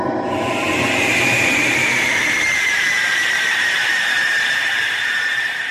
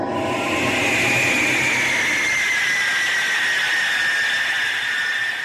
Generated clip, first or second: first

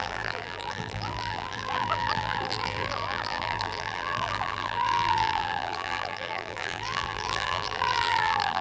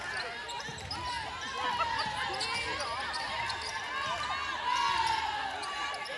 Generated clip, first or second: first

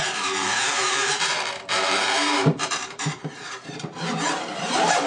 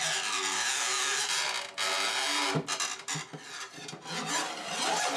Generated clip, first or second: first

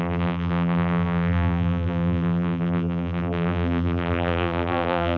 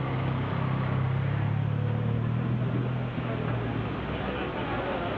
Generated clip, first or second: first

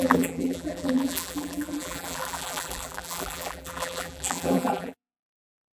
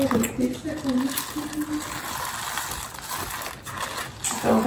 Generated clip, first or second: first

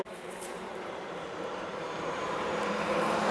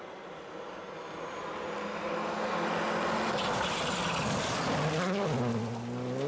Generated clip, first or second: first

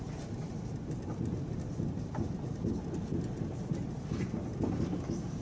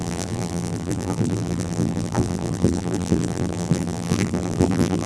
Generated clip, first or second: second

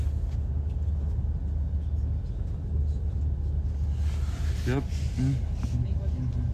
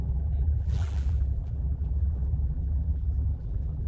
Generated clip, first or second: second